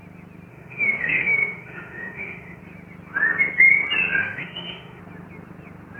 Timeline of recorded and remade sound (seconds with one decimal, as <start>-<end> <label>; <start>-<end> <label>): 0.0-0.5 recorded; 0.5-2.6 remade; 2.6-4.2 recorded; 4.2-5.0 remade; 5.0-6.0 recorded